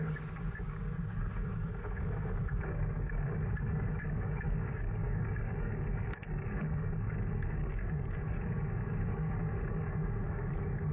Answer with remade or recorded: remade